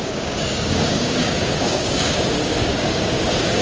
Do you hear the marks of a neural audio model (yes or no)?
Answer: yes